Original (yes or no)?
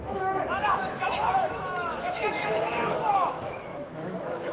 no